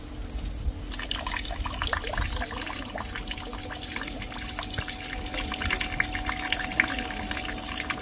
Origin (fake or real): real